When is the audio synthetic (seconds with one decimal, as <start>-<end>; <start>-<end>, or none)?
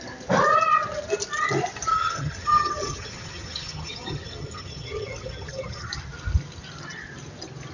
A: 1.9-5.9